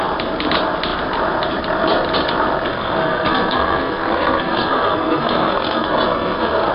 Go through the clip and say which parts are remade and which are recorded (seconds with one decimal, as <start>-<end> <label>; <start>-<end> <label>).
0.0-2.7 recorded; 2.7-6.7 remade